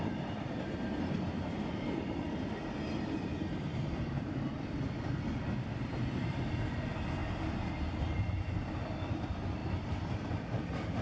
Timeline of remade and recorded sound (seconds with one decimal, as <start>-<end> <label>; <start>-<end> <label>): 0.0-7.2 remade; 7.2-8.8 recorded; 8.8-11.0 remade